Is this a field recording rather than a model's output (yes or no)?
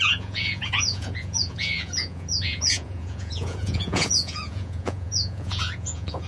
no